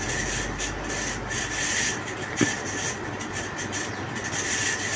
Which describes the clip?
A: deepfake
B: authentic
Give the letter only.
B